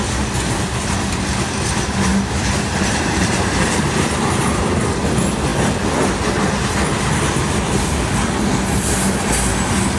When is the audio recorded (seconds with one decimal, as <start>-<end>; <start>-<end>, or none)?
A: 0.0-2.1; 4.6-10.0